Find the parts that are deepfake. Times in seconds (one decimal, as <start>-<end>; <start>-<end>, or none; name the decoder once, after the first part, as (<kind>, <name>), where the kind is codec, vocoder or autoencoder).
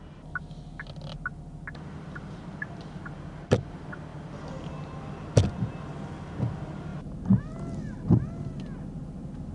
none